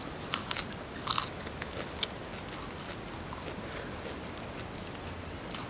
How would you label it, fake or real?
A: real